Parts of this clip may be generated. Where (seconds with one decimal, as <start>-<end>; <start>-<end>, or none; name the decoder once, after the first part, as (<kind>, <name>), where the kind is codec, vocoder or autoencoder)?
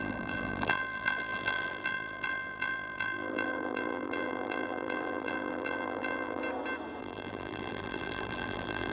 0.0-6.4 (vocoder, BigVGAN v2); 7.0-8.9